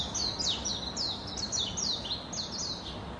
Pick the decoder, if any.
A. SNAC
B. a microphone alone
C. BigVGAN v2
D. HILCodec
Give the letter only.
B